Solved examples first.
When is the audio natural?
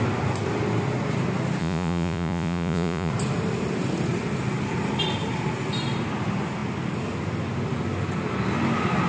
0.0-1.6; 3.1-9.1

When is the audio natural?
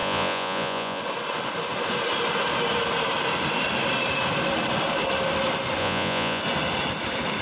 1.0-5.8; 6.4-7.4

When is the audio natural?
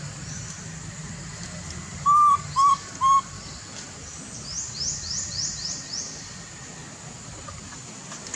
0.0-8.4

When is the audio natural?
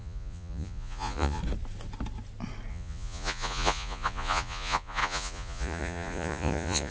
1.4-2.7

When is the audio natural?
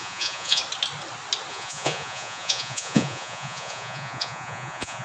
0.6-1.5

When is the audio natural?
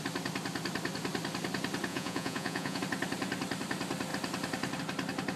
0.0-1.9; 2.8-5.4